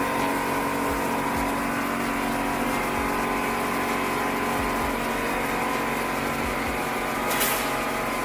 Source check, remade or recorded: recorded